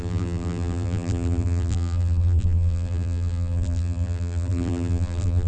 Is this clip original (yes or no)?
no